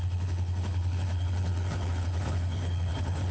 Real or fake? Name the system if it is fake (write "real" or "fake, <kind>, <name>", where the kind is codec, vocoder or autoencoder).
fake, codec, HILCodec